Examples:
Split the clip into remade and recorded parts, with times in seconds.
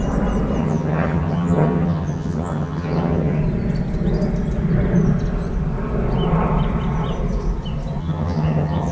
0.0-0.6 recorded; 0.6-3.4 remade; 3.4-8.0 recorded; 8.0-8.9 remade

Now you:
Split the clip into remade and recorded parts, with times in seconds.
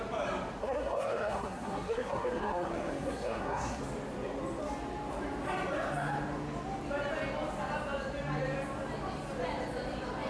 0.0-0.6 recorded; 0.6-3.8 remade; 3.8-10.3 recorded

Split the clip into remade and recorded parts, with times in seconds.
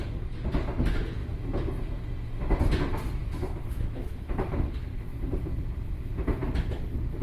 0.0-3.2 recorded; 3.2-5.0 remade; 5.0-7.2 recorded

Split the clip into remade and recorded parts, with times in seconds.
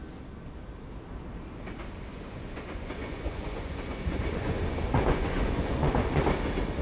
0.0-2.1 recorded; 2.1-6.2 remade; 6.2-6.8 recorded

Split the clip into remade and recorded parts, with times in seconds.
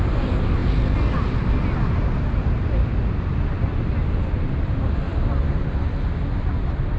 0.0-7.0 recorded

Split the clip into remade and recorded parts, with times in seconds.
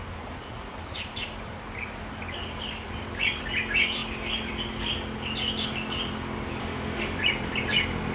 0.0-6.6 recorded; 6.6-7.2 remade; 7.2-8.1 recorded